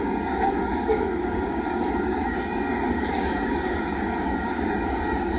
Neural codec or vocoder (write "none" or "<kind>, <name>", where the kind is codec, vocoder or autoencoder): codec, DAC